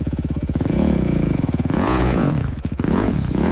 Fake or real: fake